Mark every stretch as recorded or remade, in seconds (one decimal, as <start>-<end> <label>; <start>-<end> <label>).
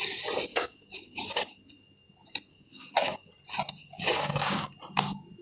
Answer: 0.0-0.5 recorded; 0.5-1.6 remade; 1.6-2.5 recorded; 2.5-3.3 remade; 3.3-3.8 recorded; 3.8-4.7 remade; 4.7-5.4 recorded